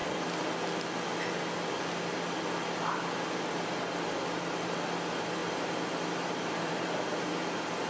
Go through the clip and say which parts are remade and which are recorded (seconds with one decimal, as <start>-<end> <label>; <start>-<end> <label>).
0.0-7.9 recorded